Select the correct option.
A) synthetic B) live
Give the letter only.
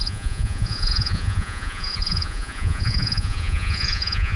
A